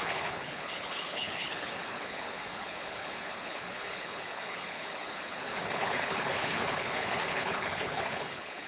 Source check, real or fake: fake